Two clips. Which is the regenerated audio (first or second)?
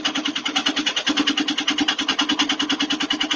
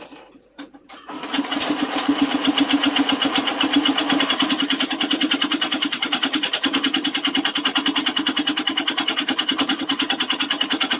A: second